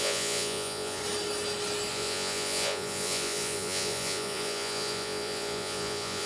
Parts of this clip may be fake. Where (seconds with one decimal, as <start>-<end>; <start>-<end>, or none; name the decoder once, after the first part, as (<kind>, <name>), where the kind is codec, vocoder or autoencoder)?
0.0-1.0 (vocoder, Vocos); 1.9-6.3